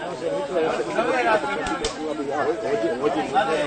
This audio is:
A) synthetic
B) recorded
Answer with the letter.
B